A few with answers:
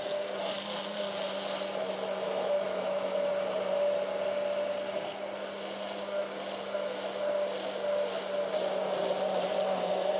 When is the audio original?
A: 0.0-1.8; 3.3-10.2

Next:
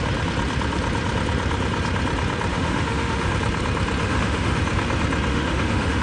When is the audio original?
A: 0.0-2.5; 3.3-4.0; 4.6-5.3